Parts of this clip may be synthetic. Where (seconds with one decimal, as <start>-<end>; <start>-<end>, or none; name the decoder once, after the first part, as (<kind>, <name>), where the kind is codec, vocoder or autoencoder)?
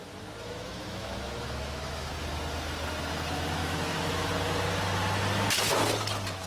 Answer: 0.0-2.1 (autoencoder, DAC-VAE); 3.6-4.3